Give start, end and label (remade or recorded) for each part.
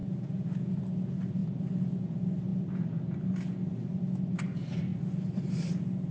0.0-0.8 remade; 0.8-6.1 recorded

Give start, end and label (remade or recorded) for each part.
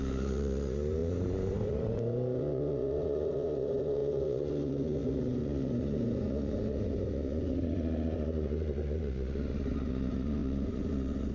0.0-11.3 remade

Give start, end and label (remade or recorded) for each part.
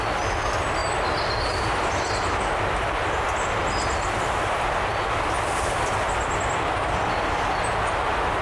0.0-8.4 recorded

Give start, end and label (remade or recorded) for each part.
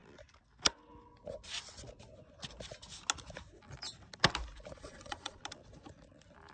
0.0-4.7 recorded; 4.7-5.4 remade; 5.4-6.5 recorded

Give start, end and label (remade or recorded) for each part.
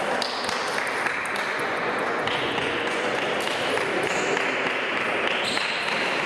0.0-1.5 recorded; 1.5-3.3 remade; 3.3-6.3 recorded